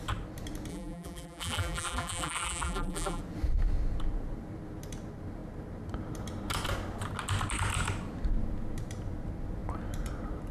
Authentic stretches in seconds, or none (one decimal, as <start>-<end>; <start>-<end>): 0.0-0.7; 3.2-10.5